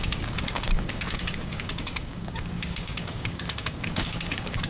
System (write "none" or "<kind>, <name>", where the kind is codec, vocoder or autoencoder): codec, DAC